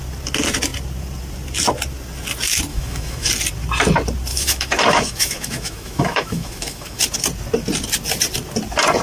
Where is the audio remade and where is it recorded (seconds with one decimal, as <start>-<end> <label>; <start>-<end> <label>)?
0.0-2.7 recorded; 2.7-3.3 remade; 3.3-4.3 recorded; 4.3-7.0 remade; 7.0-9.0 recorded